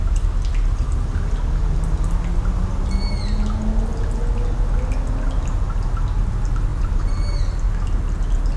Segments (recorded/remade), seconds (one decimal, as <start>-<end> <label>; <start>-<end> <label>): 0.0-8.6 recorded